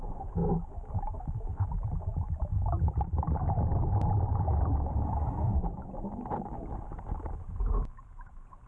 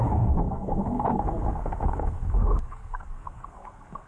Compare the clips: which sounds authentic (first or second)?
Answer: first